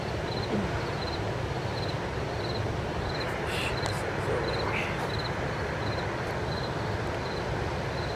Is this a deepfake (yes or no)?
no